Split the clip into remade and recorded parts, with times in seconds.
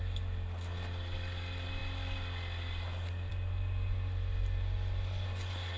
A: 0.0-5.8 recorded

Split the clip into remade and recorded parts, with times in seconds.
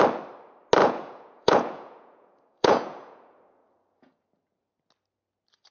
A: 0.0-0.8 recorded; 0.8-4.2 remade; 4.2-5.7 recorded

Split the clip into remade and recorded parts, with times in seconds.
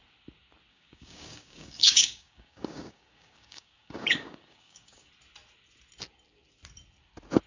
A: 0.0-0.7 recorded; 0.7-5.1 remade; 5.1-7.5 recorded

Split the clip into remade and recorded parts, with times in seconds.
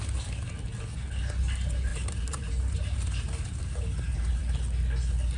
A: 0.0-1.9 recorded; 1.9-4.4 remade; 4.4-5.4 recorded